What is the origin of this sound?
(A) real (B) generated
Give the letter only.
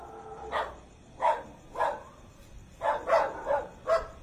A